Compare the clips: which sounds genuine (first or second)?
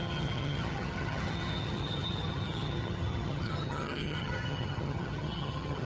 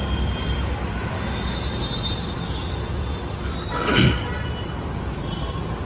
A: second